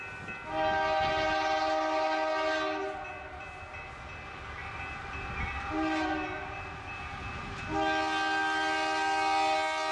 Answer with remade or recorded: recorded